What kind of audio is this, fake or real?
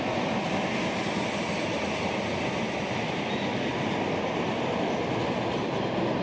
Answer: real